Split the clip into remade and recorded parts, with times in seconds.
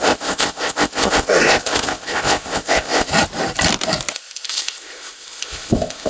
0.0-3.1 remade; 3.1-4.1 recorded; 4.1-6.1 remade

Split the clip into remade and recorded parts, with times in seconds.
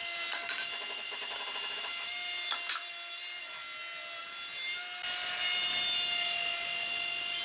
0.0-7.4 recorded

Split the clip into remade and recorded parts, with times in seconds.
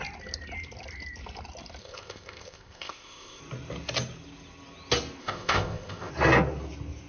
0.0-1.8 recorded; 1.8-3.4 remade; 3.4-5.2 recorded; 5.2-6.1 remade; 6.1-7.1 recorded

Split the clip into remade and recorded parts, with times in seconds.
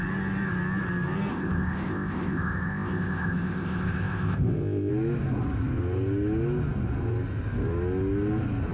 0.0-1.3 recorded; 1.3-4.9 remade; 4.9-8.7 recorded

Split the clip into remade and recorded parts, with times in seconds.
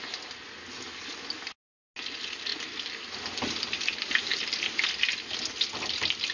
0.0-6.3 recorded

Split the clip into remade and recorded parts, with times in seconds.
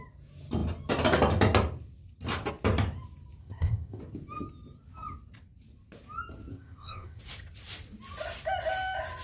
0.0-3.4 recorded; 3.4-4.0 remade; 4.0-6.5 recorded; 6.5-7.2 remade; 7.2-9.2 recorded